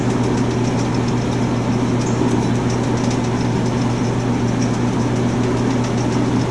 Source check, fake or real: real